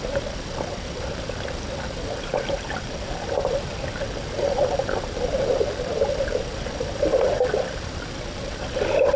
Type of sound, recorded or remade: recorded